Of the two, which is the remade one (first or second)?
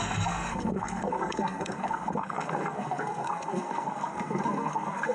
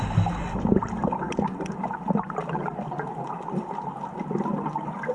first